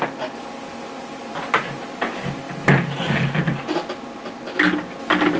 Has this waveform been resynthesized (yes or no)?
no